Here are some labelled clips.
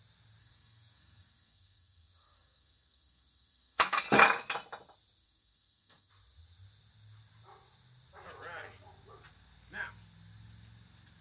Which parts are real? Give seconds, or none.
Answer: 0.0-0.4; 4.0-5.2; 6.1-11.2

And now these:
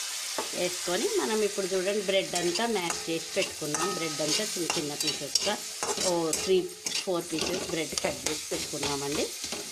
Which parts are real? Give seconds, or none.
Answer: 0.0-7.9; 8.7-9.7

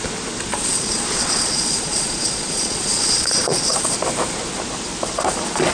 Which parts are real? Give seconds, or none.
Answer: 0.0-0.5; 3.9-5.7

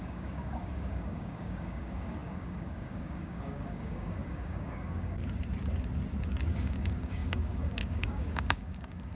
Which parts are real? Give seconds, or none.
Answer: 5.2-6.5